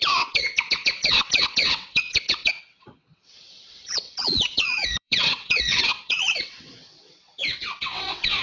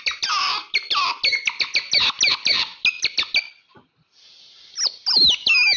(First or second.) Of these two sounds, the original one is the second